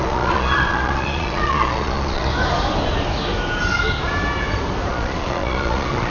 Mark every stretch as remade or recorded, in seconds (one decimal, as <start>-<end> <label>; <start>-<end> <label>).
0.0-2.3 remade; 2.3-4.9 recorded; 4.9-6.1 remade